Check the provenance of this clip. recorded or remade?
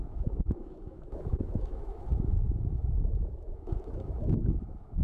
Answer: remade